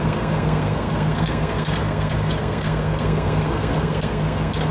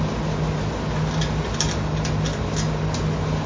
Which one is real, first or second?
second